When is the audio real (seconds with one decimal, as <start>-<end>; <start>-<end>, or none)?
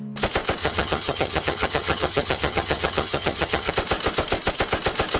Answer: 0.0-0.6; 3.7-5.2